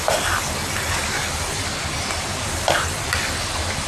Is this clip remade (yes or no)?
no